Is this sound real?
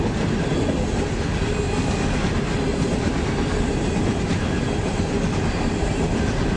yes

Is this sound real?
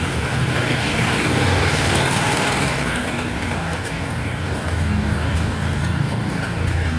no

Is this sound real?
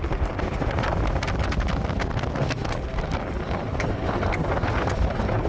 no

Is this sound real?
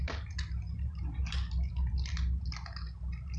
yes